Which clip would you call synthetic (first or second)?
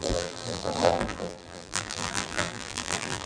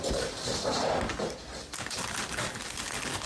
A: first